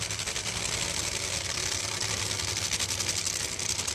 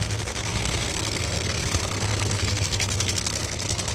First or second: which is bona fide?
first